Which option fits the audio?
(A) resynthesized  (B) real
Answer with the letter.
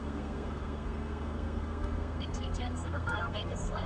A